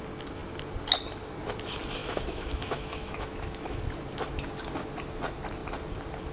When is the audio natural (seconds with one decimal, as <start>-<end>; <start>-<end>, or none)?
0.0-2.0; 3.8-6.3